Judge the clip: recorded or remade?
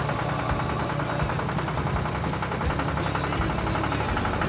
recorded